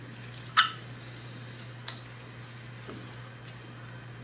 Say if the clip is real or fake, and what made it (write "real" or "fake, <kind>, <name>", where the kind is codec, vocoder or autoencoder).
real